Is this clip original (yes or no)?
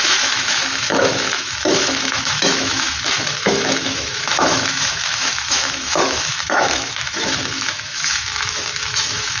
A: no